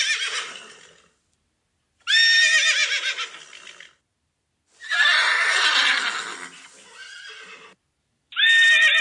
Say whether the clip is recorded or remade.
recorded